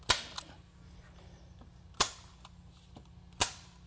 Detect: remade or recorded recorded